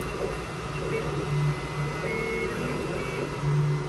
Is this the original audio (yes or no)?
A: yes